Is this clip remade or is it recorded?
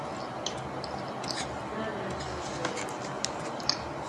recorded